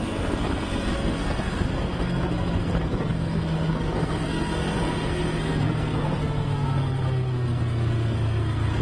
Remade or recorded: remade